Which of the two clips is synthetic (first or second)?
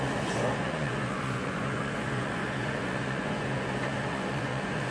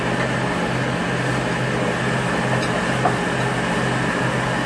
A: first